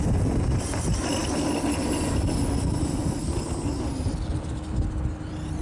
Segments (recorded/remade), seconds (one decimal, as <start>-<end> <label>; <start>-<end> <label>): 0.0-5.6 recorded